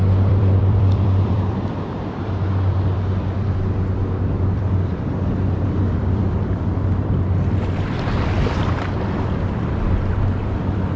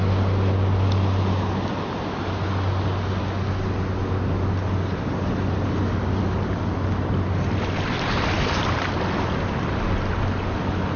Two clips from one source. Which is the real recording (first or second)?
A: second